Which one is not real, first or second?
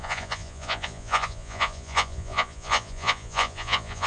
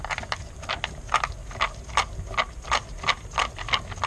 first